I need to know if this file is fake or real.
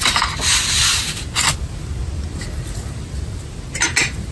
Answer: real